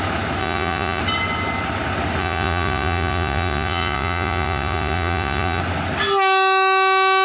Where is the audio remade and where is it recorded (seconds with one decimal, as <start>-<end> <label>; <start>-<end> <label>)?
0.0-0.4 recorded; 0.4-1.0 remade; 1.0-2.2 recorded; 2.2-5.6 remade; 5.6-7.2 recorded